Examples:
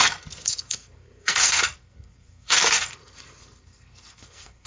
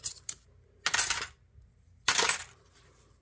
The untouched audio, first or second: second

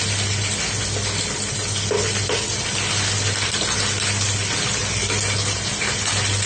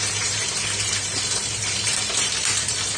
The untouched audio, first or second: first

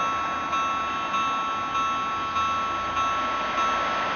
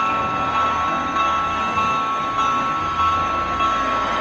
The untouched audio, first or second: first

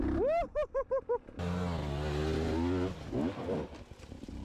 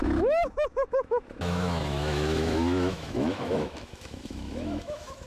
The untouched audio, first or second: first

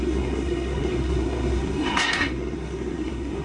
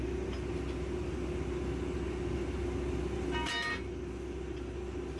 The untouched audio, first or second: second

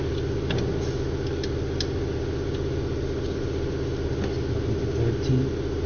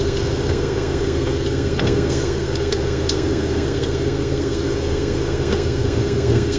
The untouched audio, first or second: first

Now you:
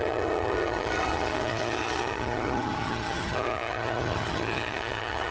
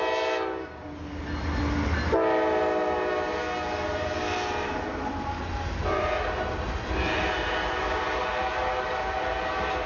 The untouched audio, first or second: second